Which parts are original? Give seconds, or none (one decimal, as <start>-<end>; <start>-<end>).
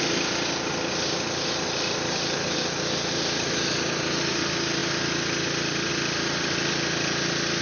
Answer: 0.0-7.6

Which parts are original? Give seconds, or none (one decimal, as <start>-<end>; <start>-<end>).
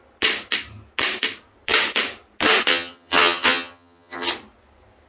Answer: 0.0-2.7; 4.3-5.1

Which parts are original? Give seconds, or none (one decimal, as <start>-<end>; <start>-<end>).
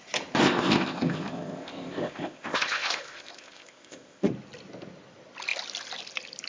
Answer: 0.0-0.4; 4.3-6.5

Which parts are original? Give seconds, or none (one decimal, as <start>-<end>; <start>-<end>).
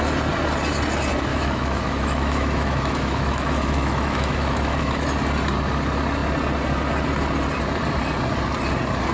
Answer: 0.0-1.3; 5.1-9.1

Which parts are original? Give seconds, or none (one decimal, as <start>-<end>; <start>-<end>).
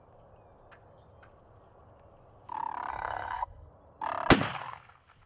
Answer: 0.0-2.9; 3.7-5.3